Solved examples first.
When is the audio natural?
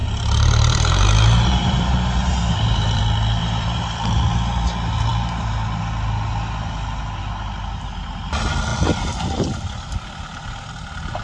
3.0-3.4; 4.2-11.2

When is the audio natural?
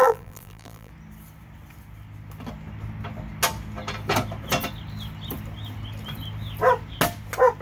0.9-7.6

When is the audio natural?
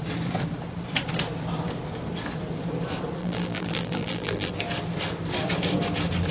0.0-3.2; 4.5-6.3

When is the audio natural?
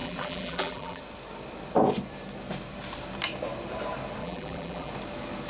1.0-4.2; 4.9-5.5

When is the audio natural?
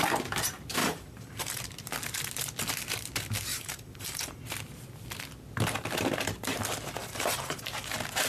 0.0-0.8; 1.6-3.5; 4.4-7.0; 7.6-8.3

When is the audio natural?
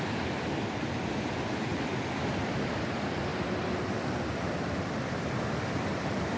3.3-4.6; 5.1-5.8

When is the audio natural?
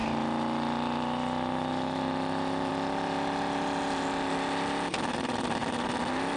2.7-6.4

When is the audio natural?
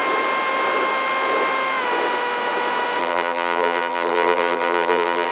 0.0-3.0